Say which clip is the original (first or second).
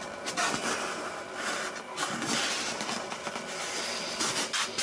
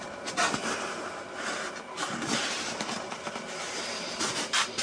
first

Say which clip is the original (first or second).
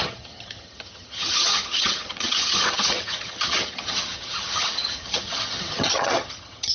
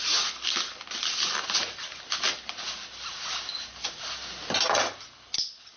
second